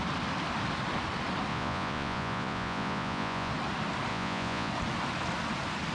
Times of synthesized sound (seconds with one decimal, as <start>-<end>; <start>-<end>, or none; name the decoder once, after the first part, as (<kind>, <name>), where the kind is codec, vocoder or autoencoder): 1.5-3.5 (vocoder, Vocos); 4.1-4.7